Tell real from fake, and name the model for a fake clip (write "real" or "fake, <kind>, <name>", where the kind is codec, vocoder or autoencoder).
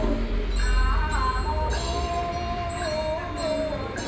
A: real